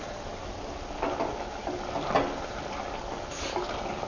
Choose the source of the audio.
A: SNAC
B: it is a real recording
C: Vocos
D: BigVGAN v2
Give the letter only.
B